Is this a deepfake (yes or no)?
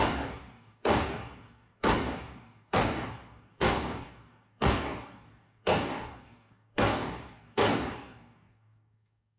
yes